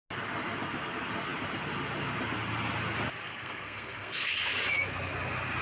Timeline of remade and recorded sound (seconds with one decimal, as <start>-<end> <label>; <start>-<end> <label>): 0.0-3.3 recorded; 3.3-4.3 remade; 4.3-5.6 recorded